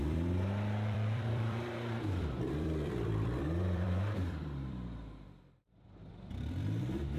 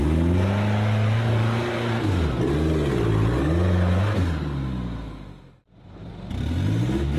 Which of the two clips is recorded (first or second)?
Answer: second